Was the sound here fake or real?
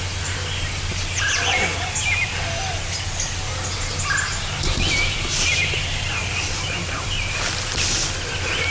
real